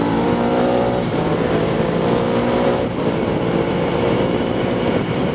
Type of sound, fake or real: fake